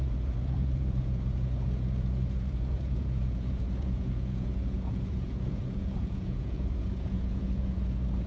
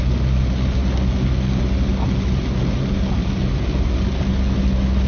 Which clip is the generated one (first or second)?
first